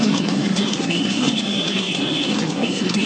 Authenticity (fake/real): fake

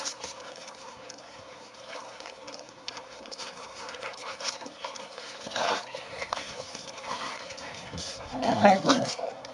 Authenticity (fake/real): fake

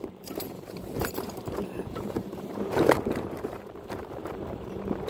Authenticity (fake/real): fake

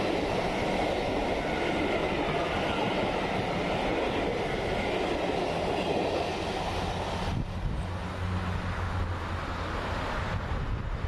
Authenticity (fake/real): real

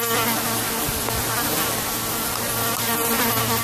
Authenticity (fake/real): real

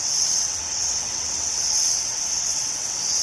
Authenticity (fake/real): fake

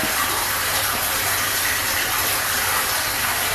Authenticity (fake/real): real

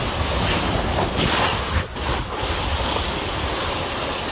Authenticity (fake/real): real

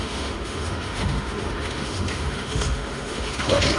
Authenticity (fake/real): fake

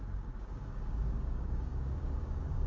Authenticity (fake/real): fake